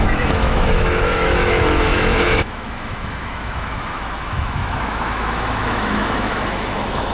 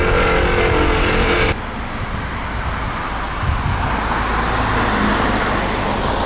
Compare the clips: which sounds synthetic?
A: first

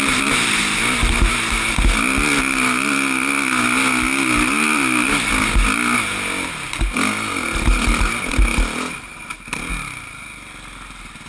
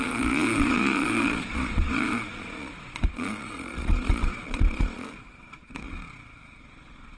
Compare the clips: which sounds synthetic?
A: second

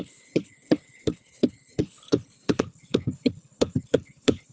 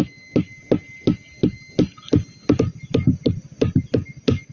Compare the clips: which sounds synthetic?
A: first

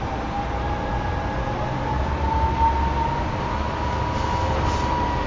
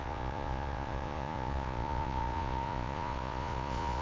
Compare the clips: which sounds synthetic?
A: second